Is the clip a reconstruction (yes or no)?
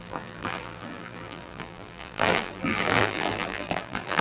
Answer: yes